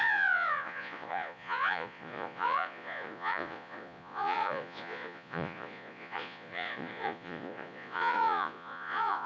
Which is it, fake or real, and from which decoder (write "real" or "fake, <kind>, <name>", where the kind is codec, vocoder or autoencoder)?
fake, vocoder, Vocos